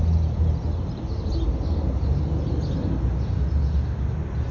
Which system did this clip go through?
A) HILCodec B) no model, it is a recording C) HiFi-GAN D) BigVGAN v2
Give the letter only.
B